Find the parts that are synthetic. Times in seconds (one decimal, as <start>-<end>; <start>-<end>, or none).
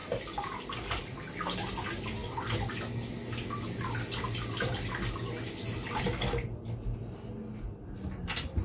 none